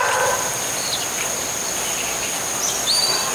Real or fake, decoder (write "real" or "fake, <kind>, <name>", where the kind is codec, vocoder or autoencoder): real